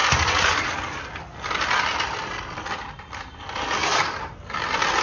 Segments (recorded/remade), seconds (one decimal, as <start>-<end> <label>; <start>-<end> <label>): 0.0-5.0 recorded